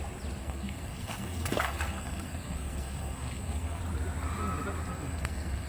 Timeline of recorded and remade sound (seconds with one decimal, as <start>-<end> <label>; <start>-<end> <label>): 0.0-0.4 recorded; 0.4-3.8 remade; 3.8-4.9 recorded; 4.9-5.7 remade